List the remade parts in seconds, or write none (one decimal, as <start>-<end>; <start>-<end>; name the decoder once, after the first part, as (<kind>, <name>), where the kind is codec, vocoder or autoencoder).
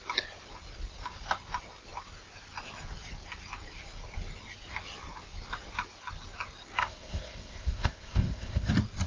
6.8-8.7 (codec, ZipCodec)